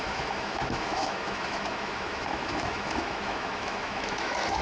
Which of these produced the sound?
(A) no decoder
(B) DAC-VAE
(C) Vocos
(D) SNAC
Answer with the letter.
B